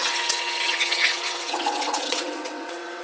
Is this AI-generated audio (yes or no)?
yes